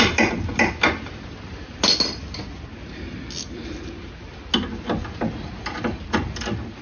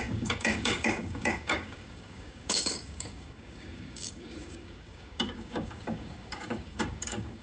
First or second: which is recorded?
first